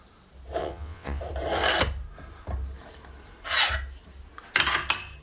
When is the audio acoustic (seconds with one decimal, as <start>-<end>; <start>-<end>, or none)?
0.0-0.6; 1.2-5.2

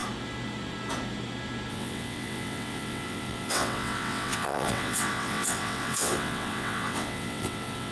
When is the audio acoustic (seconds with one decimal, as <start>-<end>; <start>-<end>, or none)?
0.0-1.7

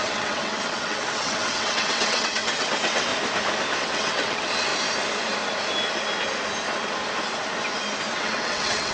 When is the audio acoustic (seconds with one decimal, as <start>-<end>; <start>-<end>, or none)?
3.1-3.8; 4.7-8.1

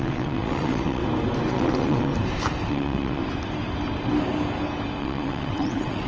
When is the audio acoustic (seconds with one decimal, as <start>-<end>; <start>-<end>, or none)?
1.0-1.5; 2.1-2.7; 3.2-5.0

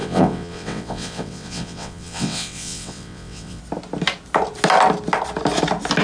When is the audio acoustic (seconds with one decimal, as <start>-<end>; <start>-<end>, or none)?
3.6-6.0

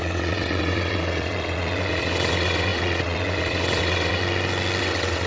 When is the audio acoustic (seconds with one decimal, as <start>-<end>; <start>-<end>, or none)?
4.2-4.8